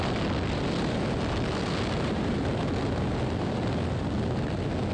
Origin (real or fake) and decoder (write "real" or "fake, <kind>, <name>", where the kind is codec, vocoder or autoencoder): real